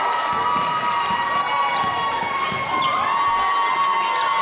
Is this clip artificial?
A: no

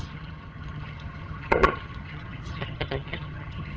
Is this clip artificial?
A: yes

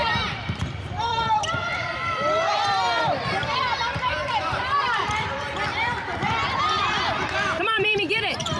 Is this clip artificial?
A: yes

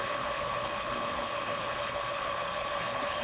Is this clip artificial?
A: yes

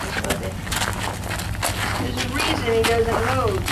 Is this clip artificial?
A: no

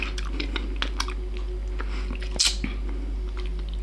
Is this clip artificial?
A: no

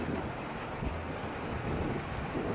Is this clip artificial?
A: no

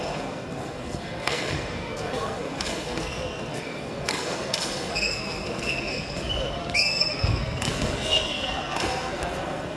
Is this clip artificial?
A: yes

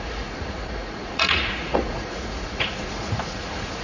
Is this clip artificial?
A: yes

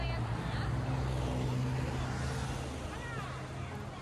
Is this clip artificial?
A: no